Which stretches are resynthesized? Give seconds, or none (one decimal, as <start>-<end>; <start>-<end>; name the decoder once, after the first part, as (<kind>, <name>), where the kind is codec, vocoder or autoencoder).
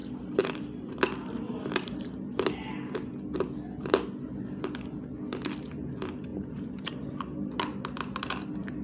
0.0-2.5 (vocoder, BigVGAN v2); 6.3-6.9